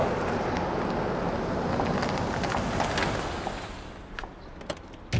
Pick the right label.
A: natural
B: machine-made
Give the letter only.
A